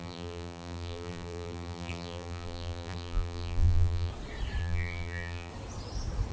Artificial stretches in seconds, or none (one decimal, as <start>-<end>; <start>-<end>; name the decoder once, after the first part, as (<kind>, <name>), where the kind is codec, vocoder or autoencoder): 0.0-4.1 (vocoder, BigVGAN v2); 4.6-5.5